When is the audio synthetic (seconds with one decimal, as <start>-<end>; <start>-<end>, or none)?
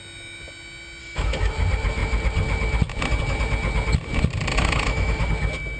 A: 1.0-1.5; 4.5-5.3